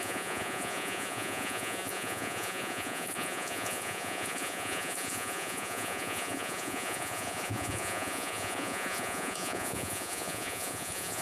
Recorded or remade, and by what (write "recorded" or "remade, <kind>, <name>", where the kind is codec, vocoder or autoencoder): remade, vocoder, Vocos